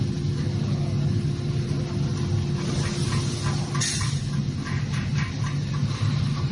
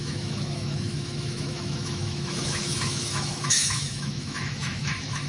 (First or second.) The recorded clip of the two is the first